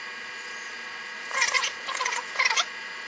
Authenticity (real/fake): fake